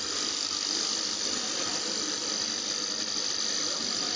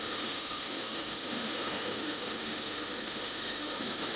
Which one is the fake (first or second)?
second